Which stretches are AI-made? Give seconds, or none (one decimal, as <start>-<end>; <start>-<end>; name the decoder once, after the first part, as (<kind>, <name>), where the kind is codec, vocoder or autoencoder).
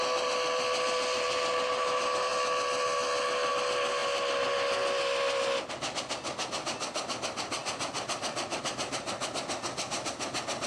none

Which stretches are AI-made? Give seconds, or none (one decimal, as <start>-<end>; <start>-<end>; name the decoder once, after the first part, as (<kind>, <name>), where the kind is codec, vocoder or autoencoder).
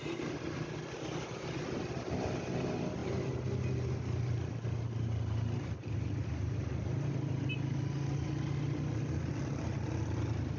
none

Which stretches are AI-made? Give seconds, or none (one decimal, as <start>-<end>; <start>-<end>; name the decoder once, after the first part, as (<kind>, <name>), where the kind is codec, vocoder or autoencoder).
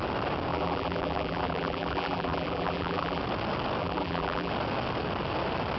0.5-3.2 (vocoder, BigVGAN v2); 3.8-4.5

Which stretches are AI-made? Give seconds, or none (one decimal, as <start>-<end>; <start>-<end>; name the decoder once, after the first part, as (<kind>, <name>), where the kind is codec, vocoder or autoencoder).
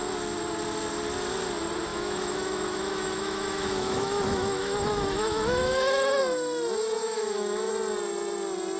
1.9-6.2 (autoencoder, DAC-VAE); 7.0-7.7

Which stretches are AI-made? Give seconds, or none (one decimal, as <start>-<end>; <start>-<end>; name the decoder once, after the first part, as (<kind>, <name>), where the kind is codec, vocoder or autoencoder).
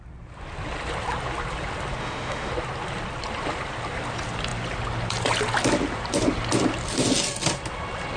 2.0-2.5 (autoencoder, DAC-VAE)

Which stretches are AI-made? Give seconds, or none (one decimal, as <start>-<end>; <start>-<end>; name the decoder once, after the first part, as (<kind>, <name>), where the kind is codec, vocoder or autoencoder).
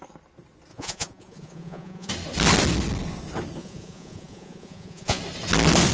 0.7-2.1 (vocoder, Vocos); 3.6-5.2